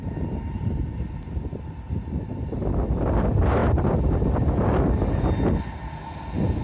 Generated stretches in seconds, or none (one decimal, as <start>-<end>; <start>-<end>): 0.0-0.8